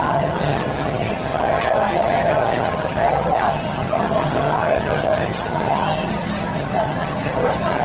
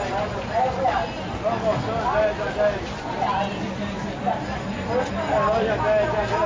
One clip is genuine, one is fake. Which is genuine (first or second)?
second